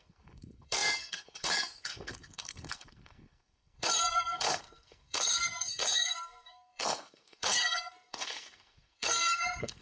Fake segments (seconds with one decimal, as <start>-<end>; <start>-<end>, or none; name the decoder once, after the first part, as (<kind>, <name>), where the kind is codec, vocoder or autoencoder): 0.0-9.8 (codec, SNAC)